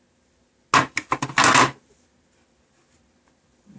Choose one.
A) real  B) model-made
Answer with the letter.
A